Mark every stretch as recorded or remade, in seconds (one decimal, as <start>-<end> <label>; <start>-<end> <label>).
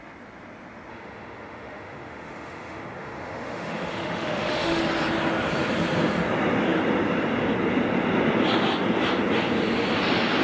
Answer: 0.0-0.9 recorded; 0.9-4.8 remade; 4.8-10.4 recorded